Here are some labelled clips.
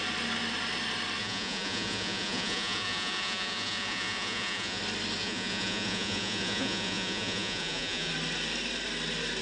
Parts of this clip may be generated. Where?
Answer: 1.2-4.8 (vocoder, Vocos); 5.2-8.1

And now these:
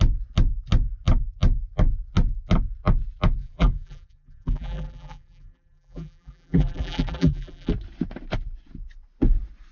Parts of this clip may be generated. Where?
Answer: 3.4-7.7 (vocoder, BigVGAN v2)